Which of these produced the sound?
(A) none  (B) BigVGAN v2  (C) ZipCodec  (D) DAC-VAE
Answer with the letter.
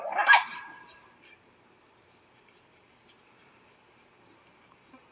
B